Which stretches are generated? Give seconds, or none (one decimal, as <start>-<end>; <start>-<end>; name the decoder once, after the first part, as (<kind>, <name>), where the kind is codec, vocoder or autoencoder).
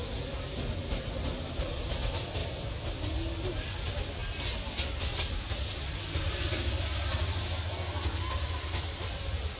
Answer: 1.7-2.4 (vocoder, BigVGAN v2); 3.5-4.2; 8.3-9.6